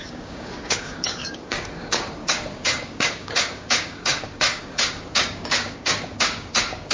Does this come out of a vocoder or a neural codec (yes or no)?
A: yes